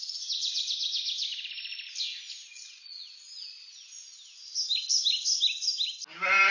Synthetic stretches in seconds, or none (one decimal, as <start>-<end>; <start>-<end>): none